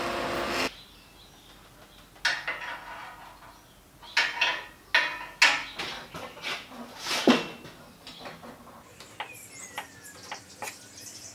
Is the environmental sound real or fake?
real